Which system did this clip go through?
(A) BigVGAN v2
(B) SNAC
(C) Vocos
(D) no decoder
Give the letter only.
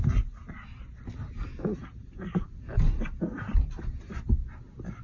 D